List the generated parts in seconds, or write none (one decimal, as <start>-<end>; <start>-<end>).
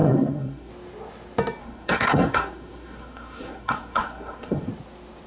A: 0.0-0.7; 1.6-4.7